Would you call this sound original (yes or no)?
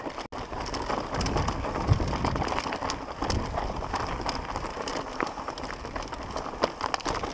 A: yes